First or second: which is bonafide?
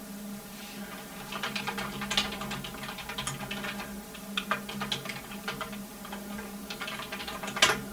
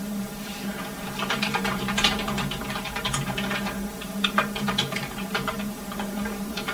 first